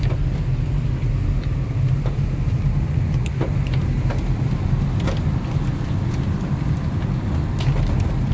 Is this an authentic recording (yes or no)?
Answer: yes